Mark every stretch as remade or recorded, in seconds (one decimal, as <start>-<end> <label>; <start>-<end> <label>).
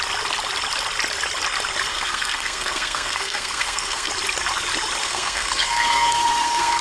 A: 0.0-1.9 recorded; 1.9-4.1 remade; 4.1-5.0 recorded; 5.0-6.8 remade